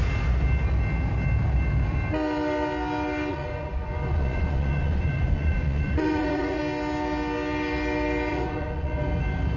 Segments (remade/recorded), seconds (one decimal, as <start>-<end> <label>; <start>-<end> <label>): 0.0-3.3 recorded; 3.3-6.6 remade; 6.6-8.3 recorded; 8.3-9.0 remade; 9.0-9.6 recorded